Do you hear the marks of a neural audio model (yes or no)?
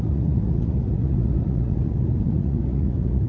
yes